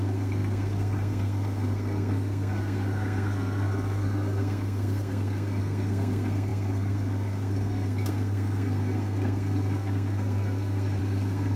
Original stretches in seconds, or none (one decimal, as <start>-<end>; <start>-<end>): none